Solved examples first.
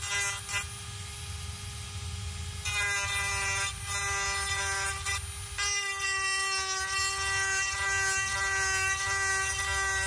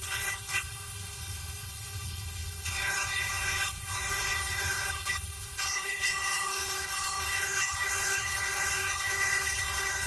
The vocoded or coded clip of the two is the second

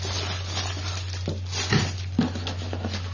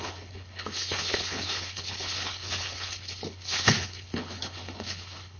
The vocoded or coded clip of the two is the second